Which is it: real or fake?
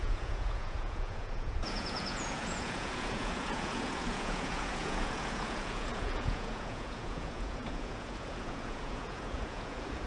fake